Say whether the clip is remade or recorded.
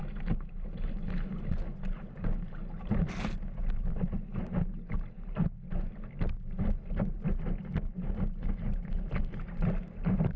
recorded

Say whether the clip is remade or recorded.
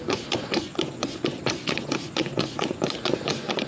remade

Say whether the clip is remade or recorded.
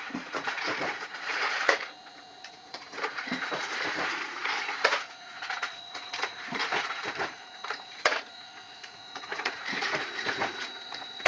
remade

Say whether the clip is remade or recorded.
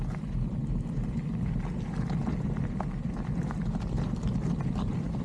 recorded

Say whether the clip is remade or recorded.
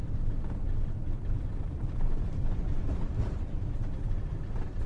remade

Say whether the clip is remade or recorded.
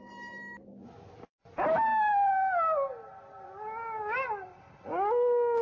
recorded